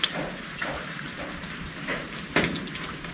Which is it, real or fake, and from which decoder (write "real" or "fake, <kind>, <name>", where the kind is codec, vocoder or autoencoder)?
real